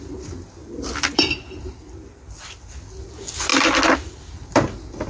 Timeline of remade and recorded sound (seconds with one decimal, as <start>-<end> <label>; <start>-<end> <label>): 0.0-5.1 recorded